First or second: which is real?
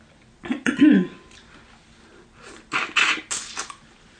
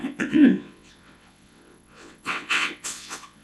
first